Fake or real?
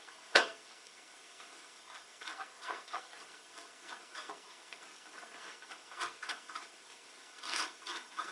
fake